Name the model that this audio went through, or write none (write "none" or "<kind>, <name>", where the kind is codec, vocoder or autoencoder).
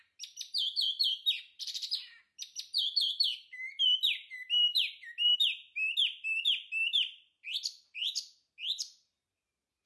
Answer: none